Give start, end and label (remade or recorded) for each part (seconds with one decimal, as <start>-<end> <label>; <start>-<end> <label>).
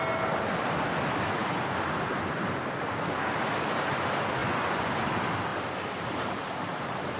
0.0-4.4 recorded; 4.4-4.9 remade; 4.9-7.2 recorded